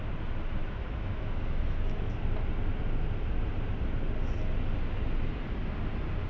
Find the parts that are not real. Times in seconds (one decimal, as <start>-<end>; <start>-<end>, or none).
0.6-2.1